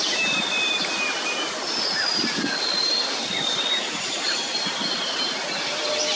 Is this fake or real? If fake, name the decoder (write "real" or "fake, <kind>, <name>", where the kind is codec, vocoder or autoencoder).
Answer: fake, vocoder, BigVGAN v2